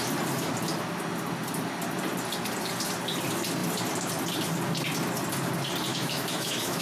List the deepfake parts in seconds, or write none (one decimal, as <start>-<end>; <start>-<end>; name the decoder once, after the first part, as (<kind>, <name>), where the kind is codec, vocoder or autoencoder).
5.9-6.8 (autoencoder, DAC-VAE)